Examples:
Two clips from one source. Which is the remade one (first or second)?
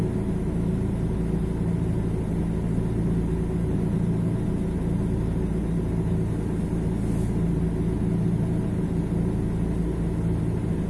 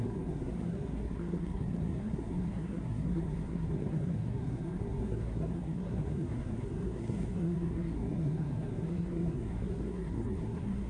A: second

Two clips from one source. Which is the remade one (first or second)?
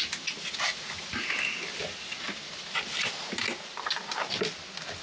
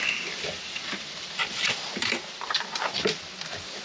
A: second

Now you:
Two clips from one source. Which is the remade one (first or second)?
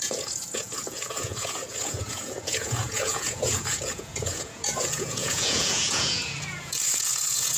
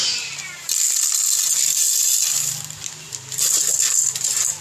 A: first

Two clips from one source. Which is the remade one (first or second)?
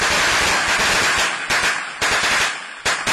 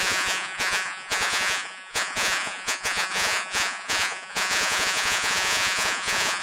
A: second